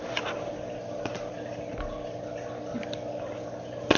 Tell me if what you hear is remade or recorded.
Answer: remade